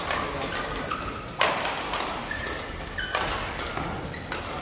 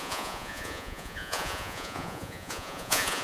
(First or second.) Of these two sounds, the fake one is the second